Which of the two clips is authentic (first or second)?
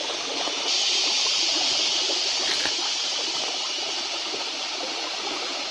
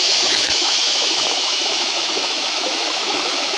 first